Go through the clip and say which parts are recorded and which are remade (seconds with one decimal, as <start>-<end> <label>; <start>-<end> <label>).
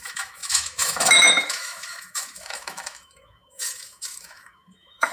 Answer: 0.0-5.1 remade